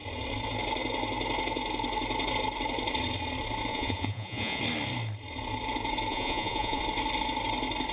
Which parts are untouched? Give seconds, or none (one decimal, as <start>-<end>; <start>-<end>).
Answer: 0.0-3.7; 4.6-6.1; 6.8-7.9